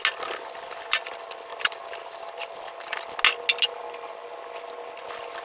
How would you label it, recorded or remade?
recorded